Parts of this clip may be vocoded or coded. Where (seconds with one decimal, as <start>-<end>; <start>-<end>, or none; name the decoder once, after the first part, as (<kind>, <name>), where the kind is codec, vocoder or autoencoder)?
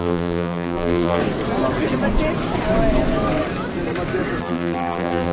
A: 0.0-1.2 (vocoder, BigVGAN v2); 4.4-5.3